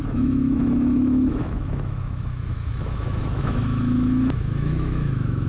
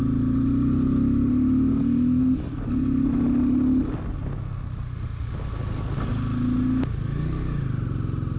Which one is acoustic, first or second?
second